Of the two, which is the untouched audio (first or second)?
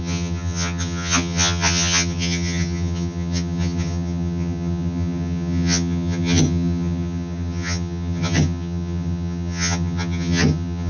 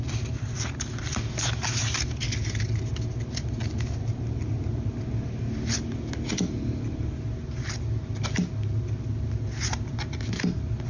second